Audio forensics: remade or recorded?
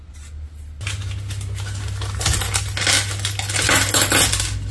recorded